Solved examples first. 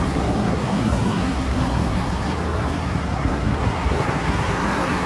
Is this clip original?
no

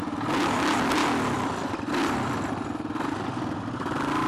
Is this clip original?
yes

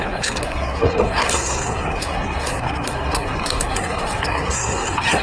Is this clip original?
no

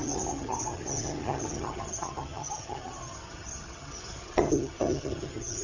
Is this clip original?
no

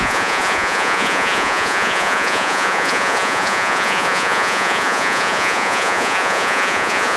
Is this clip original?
no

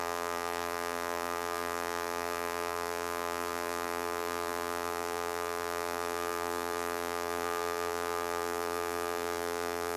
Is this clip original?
no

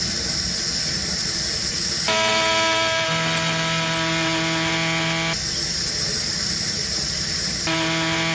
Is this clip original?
yes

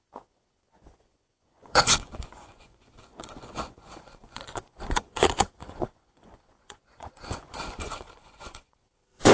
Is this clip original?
no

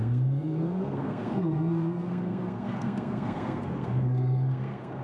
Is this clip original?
no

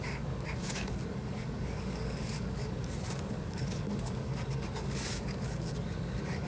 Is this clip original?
no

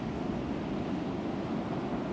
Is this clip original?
yes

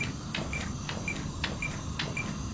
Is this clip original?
no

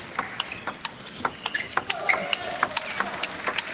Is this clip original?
yes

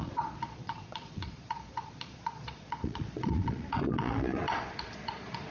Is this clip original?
no